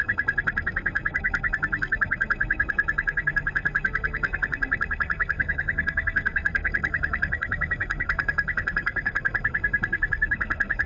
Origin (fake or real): fake